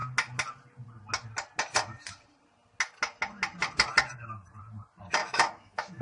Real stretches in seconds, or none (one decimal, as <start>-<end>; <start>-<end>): 0.0-5.2